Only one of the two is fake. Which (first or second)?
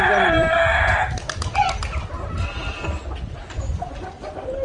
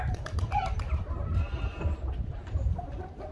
second